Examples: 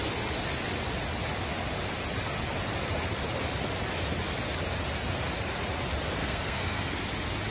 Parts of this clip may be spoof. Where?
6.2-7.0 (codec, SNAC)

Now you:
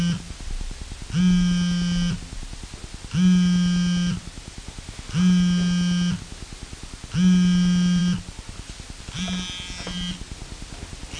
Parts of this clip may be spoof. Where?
none

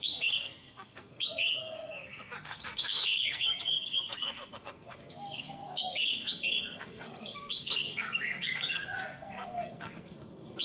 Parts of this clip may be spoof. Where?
0.0-10.6 (codec, SNAC)

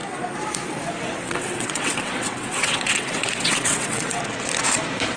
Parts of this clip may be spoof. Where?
1.1-4.2 (vocoder, WaveNeXt)

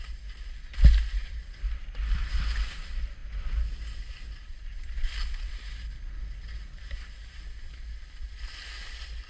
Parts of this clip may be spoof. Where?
none

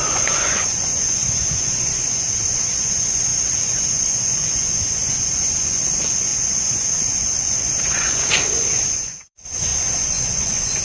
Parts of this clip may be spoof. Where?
0.0-10.8 (vocoder, Vocos)